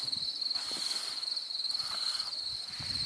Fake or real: real